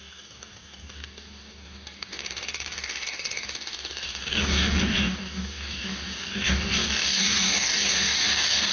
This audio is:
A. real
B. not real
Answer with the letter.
B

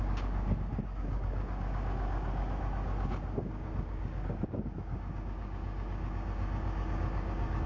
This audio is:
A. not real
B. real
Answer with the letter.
A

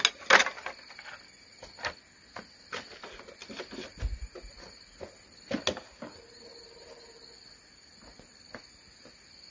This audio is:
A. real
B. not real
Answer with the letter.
A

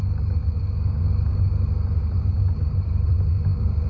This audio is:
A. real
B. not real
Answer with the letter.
B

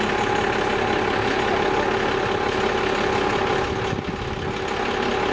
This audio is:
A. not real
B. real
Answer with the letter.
B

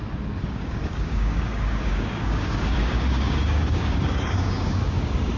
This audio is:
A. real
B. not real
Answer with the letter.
B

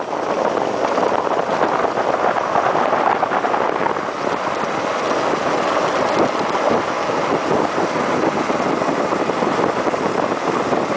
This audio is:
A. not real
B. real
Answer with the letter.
B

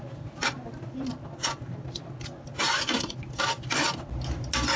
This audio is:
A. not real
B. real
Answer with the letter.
B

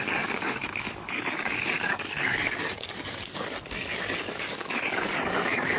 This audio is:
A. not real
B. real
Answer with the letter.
A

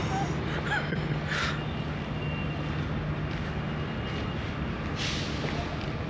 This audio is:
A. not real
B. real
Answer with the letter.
B